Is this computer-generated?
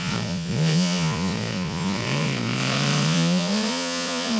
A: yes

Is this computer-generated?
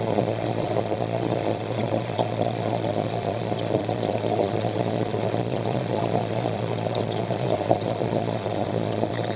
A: yes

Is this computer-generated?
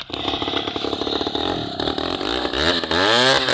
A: no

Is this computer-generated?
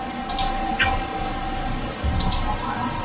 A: no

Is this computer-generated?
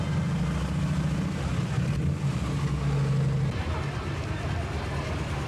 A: no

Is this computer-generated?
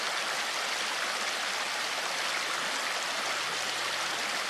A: no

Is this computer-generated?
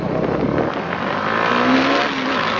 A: no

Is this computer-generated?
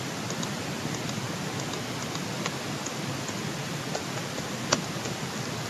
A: no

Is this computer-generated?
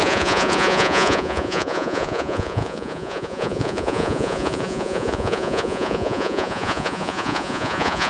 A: yes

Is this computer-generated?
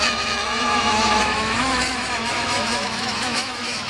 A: yes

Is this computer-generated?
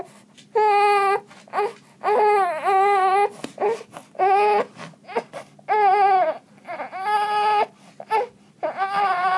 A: no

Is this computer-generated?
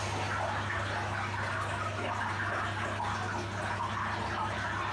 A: no